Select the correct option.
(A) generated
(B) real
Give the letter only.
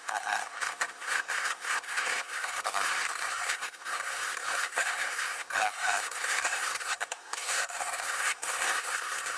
A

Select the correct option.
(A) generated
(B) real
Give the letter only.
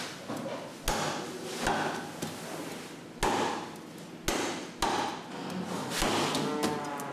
B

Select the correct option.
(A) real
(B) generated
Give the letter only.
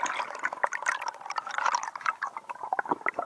A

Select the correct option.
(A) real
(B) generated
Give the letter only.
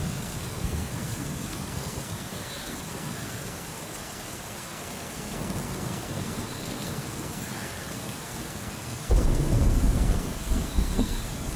B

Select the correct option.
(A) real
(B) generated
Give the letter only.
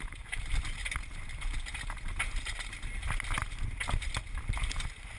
A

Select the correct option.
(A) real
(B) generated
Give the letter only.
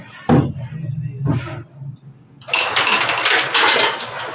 A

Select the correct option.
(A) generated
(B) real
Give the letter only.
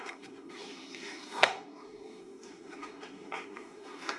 A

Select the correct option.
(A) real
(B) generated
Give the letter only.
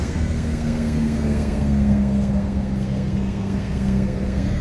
B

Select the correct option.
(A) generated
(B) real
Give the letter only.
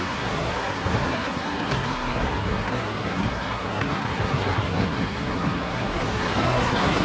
A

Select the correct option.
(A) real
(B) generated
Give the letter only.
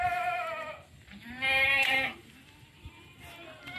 A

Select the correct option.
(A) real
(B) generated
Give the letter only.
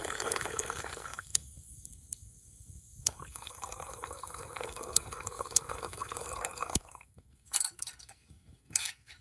B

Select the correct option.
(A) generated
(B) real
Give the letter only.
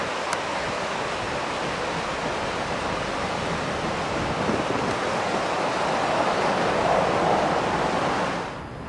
B